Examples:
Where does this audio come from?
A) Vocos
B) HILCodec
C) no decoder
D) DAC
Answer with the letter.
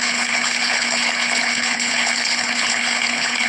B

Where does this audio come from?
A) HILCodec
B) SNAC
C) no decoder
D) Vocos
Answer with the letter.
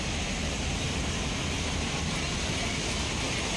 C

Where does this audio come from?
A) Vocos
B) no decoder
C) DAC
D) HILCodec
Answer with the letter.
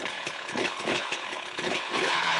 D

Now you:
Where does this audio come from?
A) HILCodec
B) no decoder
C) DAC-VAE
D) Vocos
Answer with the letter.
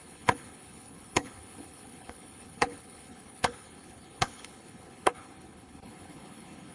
A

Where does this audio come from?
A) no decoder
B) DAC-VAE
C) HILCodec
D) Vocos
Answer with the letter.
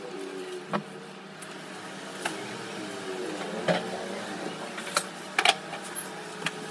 A